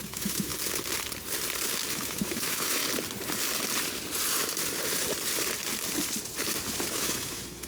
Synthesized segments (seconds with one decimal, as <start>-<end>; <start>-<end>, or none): 0.0-0.5; 1.9-2.8; 6.9-7.7